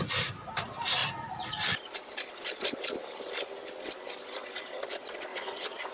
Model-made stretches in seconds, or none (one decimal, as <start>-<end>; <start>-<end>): 5.3-5.9